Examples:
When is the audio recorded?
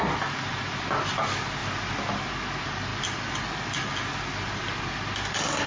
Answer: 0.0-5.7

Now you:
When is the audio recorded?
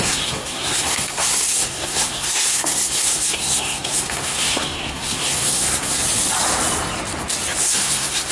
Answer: 6.0-7.6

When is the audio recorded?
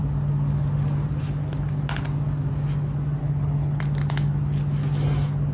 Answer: 0.0-3.2; 3.8-5.5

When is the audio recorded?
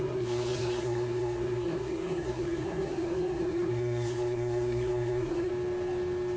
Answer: 5.5-6.4